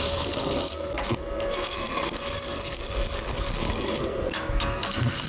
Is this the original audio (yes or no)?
no